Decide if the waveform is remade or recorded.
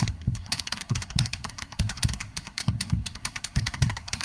remade